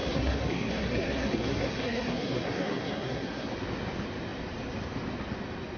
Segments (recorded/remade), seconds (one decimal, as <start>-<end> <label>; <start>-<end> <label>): 0.0-3.5 remade; 3.5-5.8 recorded

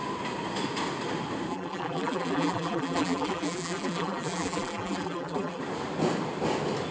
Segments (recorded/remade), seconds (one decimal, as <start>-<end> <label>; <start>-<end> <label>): 0.0-1.5 recorded; 1.5-5.6 remade; 5.6-6.9 recorded

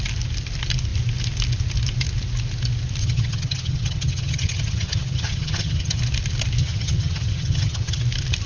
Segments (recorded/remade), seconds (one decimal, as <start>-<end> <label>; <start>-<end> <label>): 0.0-3.0 recorded; 3.0-6.0 remade; 6.0-6.6 recorded; 6.6-8.0 remade; 8.0-8.5 recorded

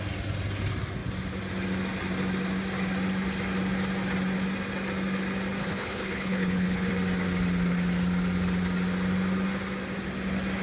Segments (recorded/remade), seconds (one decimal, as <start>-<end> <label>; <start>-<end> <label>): 0.0-5.6 recorded; 5.6-6.9 remade; 6.9-10.6 recorded